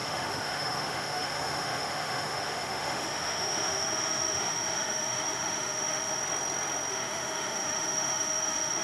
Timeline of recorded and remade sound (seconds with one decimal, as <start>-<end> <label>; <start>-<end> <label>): 0.0-6.2 remade; 6.2-6.9 recorded; 6.9-8.8 remade